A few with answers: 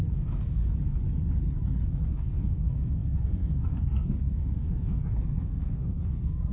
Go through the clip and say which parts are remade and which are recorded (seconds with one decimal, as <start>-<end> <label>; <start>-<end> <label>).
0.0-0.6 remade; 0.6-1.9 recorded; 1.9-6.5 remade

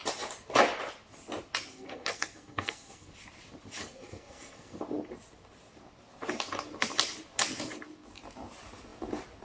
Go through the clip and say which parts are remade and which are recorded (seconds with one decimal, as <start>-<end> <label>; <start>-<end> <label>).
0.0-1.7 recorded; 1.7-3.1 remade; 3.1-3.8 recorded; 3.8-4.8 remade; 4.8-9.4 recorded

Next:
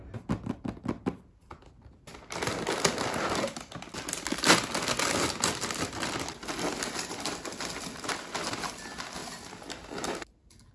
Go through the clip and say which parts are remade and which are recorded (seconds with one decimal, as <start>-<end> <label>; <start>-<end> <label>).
0.0-10.7 recorded

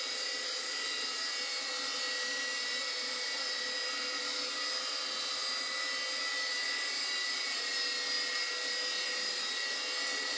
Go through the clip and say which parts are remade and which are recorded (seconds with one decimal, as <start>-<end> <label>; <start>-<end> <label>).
0.0-10.4 recorded